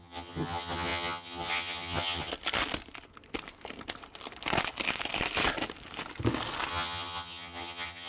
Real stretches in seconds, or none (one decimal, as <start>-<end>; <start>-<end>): 2.3-6.7